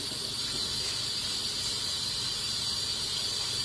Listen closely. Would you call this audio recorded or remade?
recorded